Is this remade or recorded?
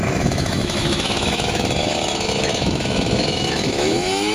remade